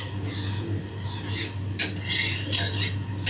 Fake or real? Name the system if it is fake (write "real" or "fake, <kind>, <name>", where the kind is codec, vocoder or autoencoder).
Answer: real